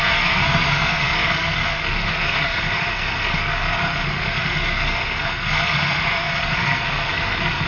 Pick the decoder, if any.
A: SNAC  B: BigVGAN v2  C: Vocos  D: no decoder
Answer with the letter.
A